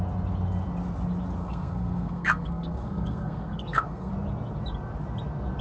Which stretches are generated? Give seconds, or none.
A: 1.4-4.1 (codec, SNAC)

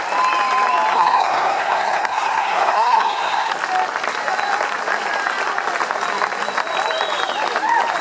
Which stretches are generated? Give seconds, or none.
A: 0.9-3.5 (codec, SNAC)